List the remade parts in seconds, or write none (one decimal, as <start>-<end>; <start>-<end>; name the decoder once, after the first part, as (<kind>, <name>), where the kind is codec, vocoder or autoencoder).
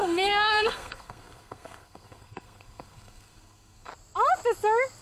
0.0-3.9 (codec, SNAC)